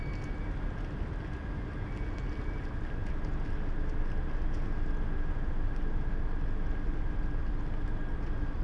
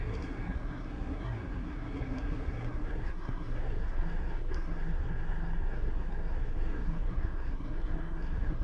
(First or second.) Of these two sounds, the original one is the first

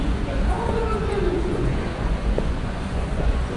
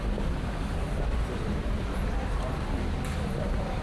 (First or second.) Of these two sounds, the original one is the second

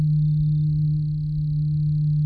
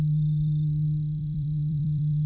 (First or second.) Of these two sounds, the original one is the first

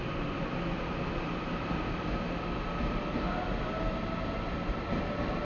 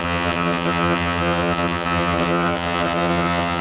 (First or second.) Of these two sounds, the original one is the first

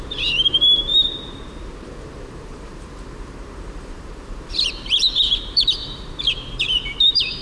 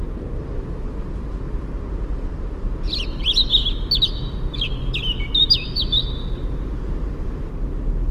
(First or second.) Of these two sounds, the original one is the second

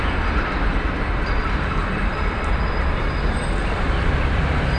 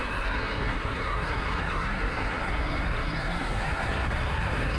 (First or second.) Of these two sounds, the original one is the first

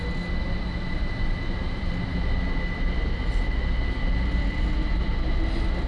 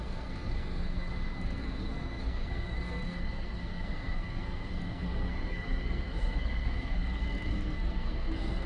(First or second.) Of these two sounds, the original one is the first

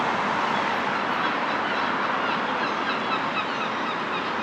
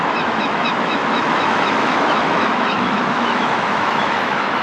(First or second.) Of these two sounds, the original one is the first